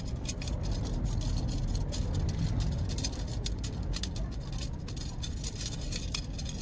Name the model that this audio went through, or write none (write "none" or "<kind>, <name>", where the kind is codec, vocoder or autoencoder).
none